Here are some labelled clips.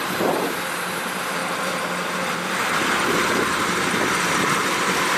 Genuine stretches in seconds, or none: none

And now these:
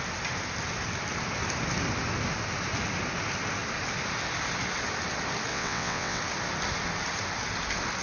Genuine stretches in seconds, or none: 0.0-5.5; 6.2-8.0

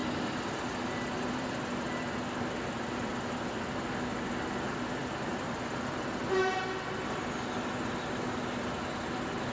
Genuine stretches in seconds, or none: 0.0-9.5

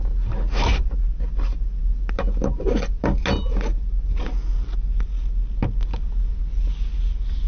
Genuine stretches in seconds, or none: 0.0-7.5

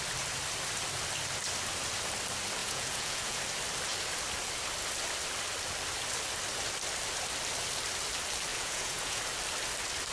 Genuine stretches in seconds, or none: 0.0-2.6; 3.4-8.5; 9.2-10.1

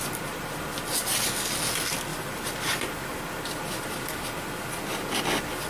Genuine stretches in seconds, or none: 0.0-2.1; 3.2-5.7

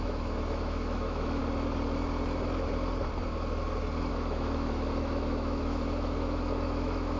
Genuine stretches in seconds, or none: 1.4-4.1

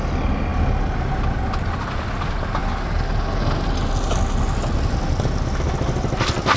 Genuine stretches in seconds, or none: 0.0-6.6